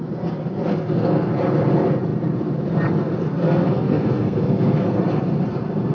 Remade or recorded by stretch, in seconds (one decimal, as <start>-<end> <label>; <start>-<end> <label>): 0.0-0.7 recorded; 0.7-1.3 remade; 1.3-3.3 recorded; 3.3-5.0 remade; 5.0-5.9 recorded